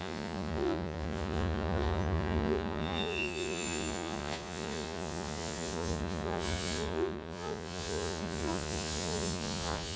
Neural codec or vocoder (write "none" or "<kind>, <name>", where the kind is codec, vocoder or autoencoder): vocoder, Vocos